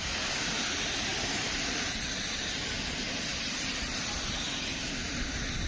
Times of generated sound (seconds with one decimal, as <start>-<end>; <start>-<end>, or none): 1.1-2.7